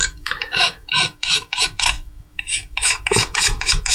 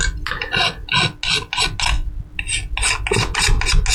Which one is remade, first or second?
first